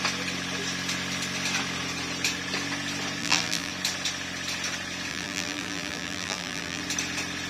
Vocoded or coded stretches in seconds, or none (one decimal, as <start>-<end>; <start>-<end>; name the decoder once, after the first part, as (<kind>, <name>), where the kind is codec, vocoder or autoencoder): 3.2-3.7 (vocoder, BigVGAN v2); 5.1-6.8